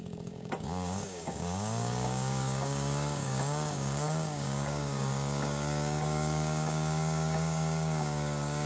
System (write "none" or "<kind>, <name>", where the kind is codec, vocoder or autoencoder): codec, DAC